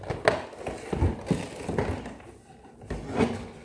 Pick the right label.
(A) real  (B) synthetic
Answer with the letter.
A